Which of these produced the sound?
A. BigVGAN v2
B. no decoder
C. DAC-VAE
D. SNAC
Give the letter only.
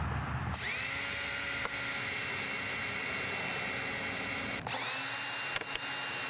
B